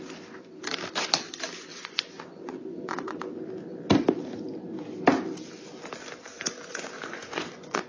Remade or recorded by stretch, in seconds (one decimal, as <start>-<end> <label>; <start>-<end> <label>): 0.0-1.7 recorded; 1.7-3.2 remade; 3.2-6.6 recorded; 6.6-7.9 remade